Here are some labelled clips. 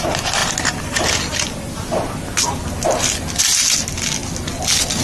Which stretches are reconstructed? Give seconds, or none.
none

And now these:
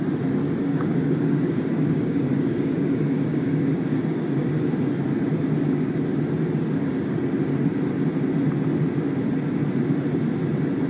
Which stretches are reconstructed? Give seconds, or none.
0.4-4.5 (codec, DAC)

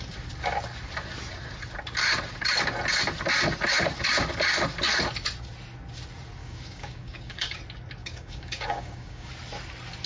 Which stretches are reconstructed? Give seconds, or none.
6.4-7.6 (codec, DAC); 8.0-9.3

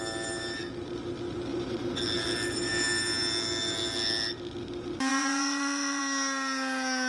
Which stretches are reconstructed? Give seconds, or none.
1.5-2.0 (vocoder, Vocos); 5.1-6.0

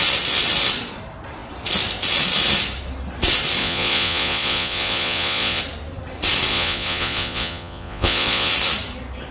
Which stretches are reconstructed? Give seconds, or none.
3.6-5.6 (vocoder, Vocos); 6.5-8.5

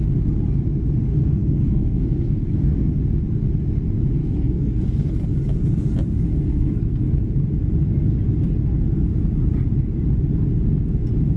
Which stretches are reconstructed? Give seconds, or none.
1.1-2.9 (codec, SNAC); 4.2-5.1; 6.3-7.3

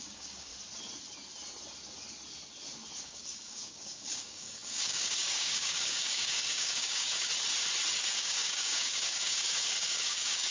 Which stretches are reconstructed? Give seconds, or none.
0.0-0.5 (codec, DAC); 3.0-7.3; 8.0-10.5